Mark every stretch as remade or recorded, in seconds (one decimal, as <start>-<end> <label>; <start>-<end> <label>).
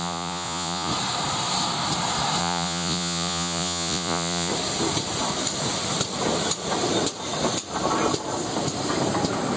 0.0-0.9 remade; 0.9-2.4 recorded; 2.4-4.5 remade; 4.5-9.6 recorded